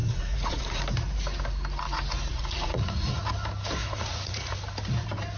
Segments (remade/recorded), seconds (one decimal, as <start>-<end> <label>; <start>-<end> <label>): 0.0-0.8 remade; 0.8-2.3 recorded; 2.3-3.3 remade; 3.3-3.8 recorded; 3.8-4.6 remade; 4.6-5.4 recorded